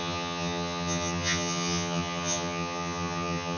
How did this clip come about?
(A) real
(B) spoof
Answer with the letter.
B